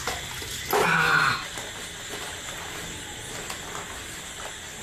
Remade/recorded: recorded